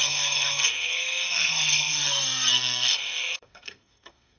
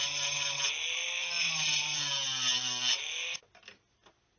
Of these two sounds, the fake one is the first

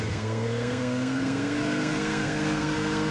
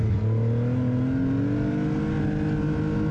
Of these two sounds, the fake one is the first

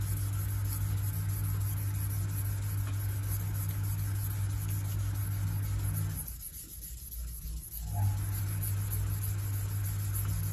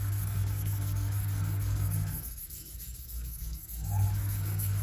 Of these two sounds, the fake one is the second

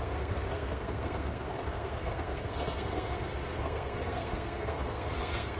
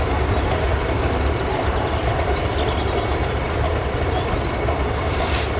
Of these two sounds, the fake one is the first